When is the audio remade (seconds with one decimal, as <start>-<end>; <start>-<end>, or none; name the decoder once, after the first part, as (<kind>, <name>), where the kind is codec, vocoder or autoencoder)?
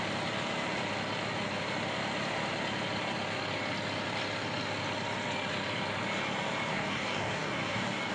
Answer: 6.7-8.1 (codec, DAC)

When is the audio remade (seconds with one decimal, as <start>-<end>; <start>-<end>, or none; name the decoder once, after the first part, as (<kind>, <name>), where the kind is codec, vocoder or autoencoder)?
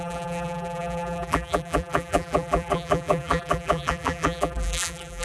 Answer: 0.0-5.2 (vocoder, BigVGAN v2)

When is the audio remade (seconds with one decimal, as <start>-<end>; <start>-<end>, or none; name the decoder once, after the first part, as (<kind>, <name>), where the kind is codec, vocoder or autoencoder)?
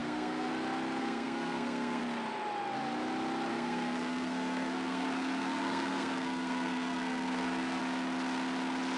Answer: 0.0-0.5 (codec, SNAC); 1.0-2.0; 3.5-7.8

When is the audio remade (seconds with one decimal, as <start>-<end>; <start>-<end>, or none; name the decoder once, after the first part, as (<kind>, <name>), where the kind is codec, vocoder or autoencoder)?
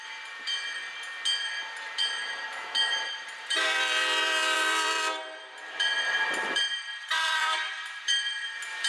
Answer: 0.0-0.8 (vocoder, BigVGAN v2); 1.4-2.2; 2.8-8.9